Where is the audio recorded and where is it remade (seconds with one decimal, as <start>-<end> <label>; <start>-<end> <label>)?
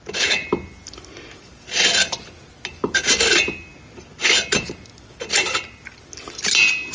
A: 0.0-6.9 recorded